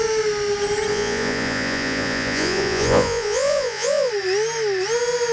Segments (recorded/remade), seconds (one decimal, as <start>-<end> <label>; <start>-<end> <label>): 0.0-0.9 recorded; 0.9-4.1 remade; 4.1-5.3 recorded